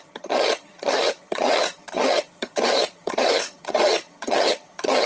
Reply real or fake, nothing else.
fake